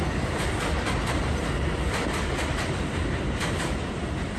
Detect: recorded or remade remade